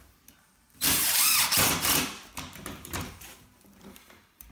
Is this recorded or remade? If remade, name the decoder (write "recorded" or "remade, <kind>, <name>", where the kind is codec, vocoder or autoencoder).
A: remade, vocoder, BigVGAN v2